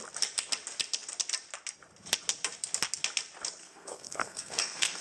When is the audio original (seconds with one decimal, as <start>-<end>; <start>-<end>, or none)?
0.0-3.6